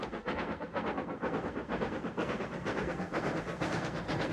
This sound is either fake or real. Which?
fake